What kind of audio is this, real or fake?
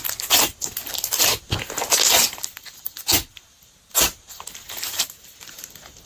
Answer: real